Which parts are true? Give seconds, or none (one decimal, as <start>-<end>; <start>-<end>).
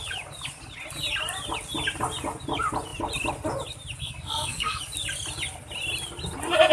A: 0.0-4.0; 4.8-6.7